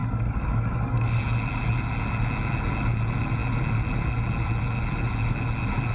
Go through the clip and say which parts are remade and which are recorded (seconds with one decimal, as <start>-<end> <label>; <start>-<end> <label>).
0.0-1.2 remade; 1.2-5.9 recorded